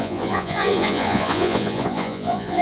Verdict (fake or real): fake